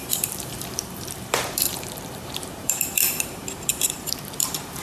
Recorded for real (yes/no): no